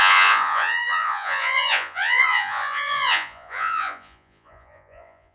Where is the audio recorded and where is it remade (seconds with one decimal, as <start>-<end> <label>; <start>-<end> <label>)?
0.0-5.3 remade